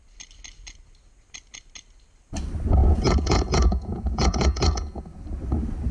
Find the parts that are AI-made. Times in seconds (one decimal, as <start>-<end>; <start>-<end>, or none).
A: 2.8-5.0